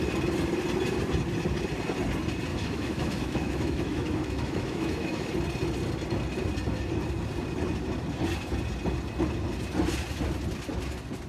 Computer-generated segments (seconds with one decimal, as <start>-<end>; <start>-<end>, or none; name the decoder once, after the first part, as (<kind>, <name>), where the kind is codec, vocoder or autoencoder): 2.5-5.3 (autoencoder, DAC-VAE)

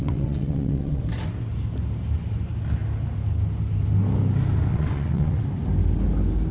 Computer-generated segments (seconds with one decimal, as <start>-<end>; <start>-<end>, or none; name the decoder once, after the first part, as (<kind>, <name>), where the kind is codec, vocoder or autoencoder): 0.0-1.0 (vocoder, WaveNeXt); 4.7-5.4

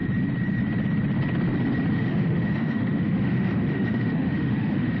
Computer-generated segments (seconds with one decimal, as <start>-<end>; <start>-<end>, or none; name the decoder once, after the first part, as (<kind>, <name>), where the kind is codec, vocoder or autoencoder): 1.9-5.0 (autoencoder, DAC-VAE)

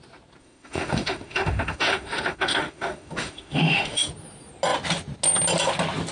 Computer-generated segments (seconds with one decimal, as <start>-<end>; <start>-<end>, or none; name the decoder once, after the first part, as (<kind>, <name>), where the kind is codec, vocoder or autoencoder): 0.4-4.1 (autoencoder, DAC-VAE)